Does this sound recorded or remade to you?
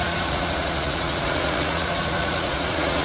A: remade